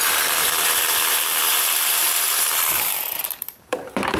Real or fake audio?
fake